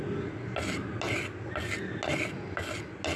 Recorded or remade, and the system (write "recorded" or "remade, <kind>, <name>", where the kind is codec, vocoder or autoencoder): recorded